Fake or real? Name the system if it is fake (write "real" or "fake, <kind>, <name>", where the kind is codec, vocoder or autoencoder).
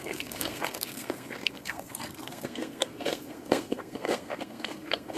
fake, codec, SNAC